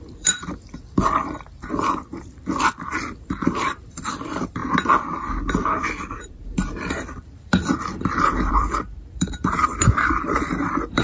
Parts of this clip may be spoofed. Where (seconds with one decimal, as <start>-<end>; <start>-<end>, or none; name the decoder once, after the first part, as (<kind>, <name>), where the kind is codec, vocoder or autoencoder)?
0.0-4.6 (vocoder, BigVGAN v2); 6.3-11.0